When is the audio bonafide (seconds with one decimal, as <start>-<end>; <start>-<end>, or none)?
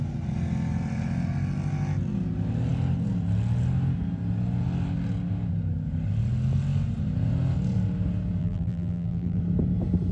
0.0-8.4; 9.4-10.1